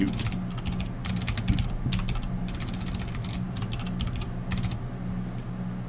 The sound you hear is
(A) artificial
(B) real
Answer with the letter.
B